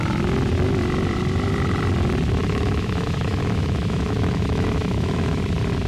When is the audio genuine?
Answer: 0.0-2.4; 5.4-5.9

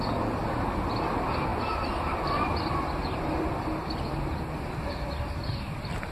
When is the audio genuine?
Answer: 0.0-6.1

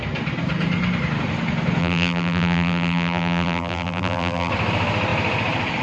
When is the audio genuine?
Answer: 0.0-1.8; 4.5-5.8

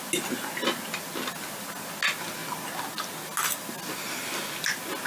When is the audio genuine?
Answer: 0.0-5.1

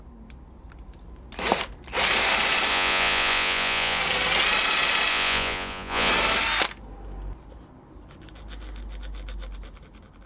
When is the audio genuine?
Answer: 0.0-2.7; 4.0-5.1; 6.1-10.3

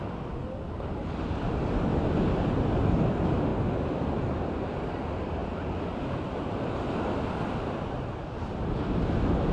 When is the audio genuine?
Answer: 0.0-1.9; 2.5-9.5

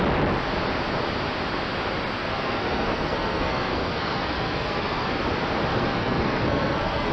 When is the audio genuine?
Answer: 0.0-2.2; 5.2-5.7